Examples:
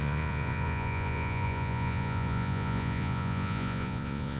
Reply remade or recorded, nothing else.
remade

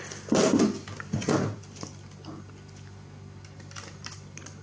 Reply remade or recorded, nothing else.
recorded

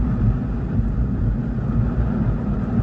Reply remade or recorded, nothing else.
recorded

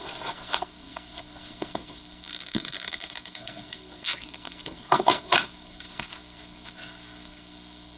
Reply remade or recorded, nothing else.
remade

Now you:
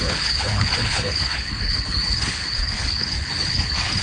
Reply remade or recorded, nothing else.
remade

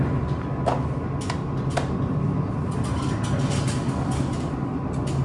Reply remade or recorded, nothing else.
recorded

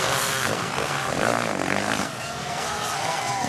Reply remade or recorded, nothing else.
remade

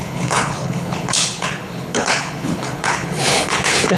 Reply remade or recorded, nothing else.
remade